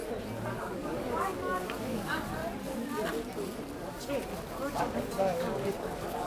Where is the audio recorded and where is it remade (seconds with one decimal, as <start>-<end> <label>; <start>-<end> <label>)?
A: 0.0-0.6 recorded; 0.6-2.4 remade; 2.4-3.9 recorded; 3.9-4.3 remade; 4.3-4.8 recorded; 4.8-6.3 remade